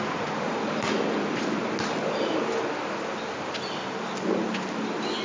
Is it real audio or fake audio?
real